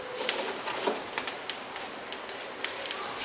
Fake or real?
real